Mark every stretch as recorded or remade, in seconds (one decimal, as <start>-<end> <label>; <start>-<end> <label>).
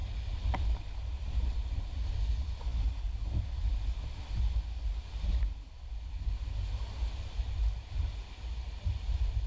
0.0-9.5 recorded